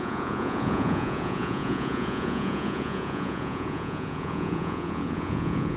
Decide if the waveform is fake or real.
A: fake